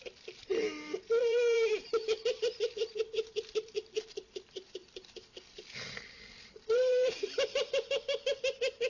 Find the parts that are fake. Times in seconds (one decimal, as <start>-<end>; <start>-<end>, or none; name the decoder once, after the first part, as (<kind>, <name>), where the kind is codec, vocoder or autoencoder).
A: 0.0-0.5 (vocoder, BigVGAN v2); 1.2-8.9